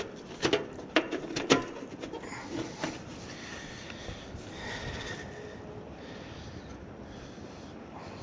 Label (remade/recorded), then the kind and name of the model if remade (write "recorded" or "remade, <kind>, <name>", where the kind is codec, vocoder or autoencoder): recorded